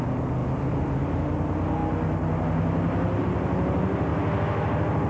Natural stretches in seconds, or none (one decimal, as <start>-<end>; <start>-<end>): 0.0-0.4; 1.2-5.1